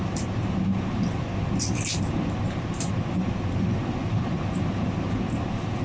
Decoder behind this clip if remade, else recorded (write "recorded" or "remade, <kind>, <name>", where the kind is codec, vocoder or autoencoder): remade, vocoder, BigVGAN v2